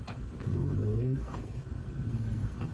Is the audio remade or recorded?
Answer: remade